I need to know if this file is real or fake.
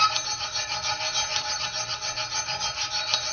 real